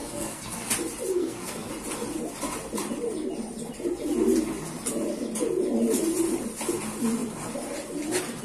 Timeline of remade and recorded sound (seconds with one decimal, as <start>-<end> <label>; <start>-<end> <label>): 0.0-0.7 remade; 0.7-1.1 recorded; 1.1-1.7 remade; 1.7-8.4 recorded